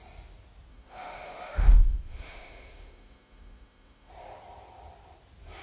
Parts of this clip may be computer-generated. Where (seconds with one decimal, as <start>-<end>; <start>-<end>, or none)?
0.7-4.1